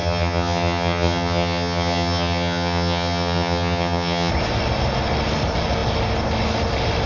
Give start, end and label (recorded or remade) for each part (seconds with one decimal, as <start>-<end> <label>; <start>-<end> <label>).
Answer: 0.0-4.3 remade; 4.3-7.1 recorded